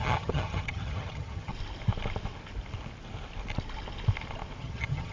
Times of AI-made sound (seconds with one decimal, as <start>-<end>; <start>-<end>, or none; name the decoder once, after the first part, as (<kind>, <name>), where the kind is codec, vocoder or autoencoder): 0.0-1.5 (vocoder, HiFi-GAN); 4.6-5.1